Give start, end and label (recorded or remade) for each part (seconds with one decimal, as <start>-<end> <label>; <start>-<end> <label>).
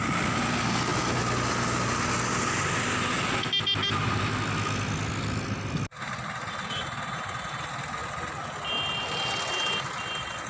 0.0-10.5 recorded